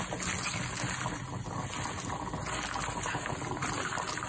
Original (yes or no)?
yes